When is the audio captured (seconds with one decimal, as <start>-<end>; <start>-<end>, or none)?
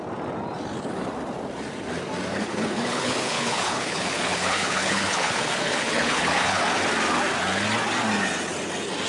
0.0-2.3; 6.6-9.1